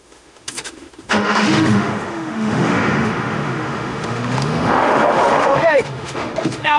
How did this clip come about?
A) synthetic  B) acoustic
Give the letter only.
A